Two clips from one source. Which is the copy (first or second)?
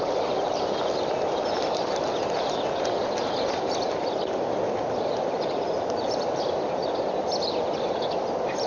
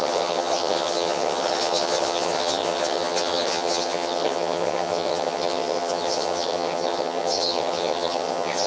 second